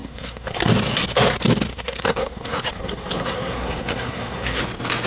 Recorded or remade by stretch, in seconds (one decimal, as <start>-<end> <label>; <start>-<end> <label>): 0.0-0.7 remade; 0.7-1.7 recorded; 1.7-4.6 remade; 4.6-5.1 recorded